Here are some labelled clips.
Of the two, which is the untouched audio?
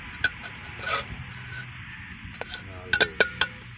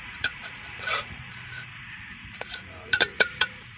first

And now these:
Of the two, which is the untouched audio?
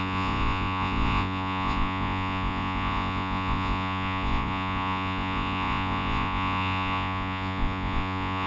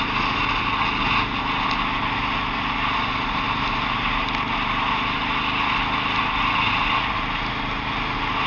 second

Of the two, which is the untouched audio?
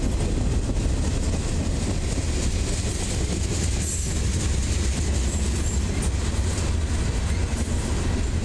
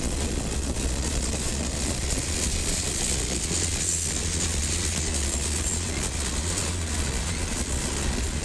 first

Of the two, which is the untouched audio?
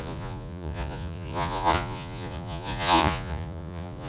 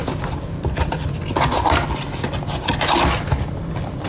second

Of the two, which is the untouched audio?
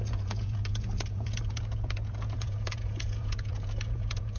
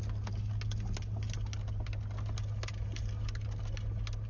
second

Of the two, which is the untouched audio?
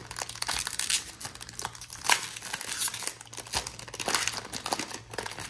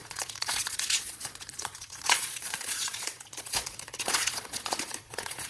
first